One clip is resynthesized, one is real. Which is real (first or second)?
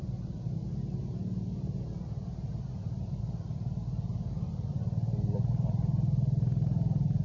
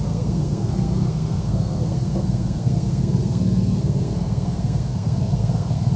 first